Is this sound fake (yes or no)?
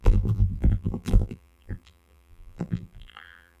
yes